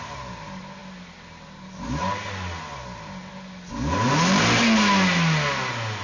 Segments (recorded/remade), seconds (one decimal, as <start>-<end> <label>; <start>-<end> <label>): 0.0-6.0 recorded